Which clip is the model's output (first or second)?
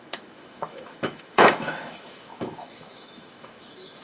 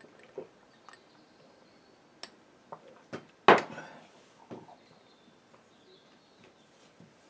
first